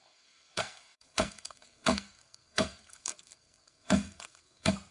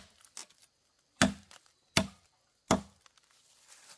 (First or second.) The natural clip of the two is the second